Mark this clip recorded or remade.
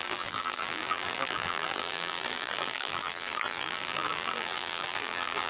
remade